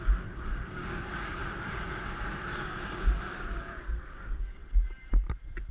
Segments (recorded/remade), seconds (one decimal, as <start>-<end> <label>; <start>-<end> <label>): 0.0-4.6 remade; 4.6-5.7 recorded